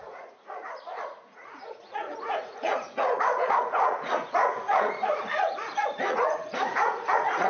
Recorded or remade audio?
remade